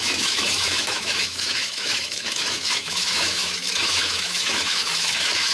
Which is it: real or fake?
fake